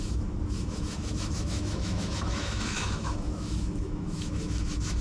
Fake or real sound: fake